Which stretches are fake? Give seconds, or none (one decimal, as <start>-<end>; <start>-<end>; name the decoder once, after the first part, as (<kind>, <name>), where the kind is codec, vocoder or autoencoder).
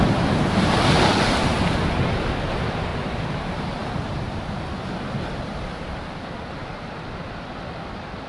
none